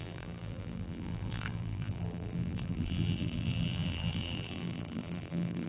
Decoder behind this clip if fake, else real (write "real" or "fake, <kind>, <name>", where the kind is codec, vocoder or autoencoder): fake, vocoder, BigVGAN v2